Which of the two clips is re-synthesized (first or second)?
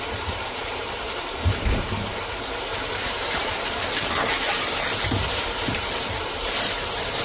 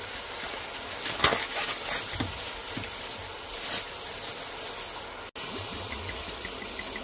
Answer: first